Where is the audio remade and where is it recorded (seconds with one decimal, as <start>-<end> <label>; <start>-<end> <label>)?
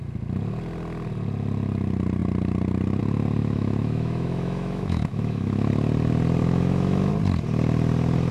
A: 0.0-3.4 recorded; 3.4-5.7 remade; 5.7-6.4 recorded; 6.4-7.1 remade; 7.1-8.3 recorded